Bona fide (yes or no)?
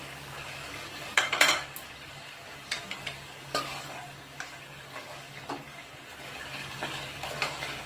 no